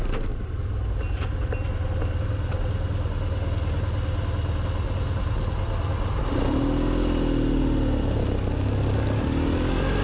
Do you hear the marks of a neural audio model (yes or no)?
no